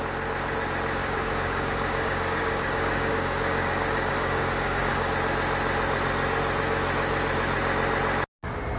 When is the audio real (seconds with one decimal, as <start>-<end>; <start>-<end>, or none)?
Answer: 0.0-1.0; 5.1-8.8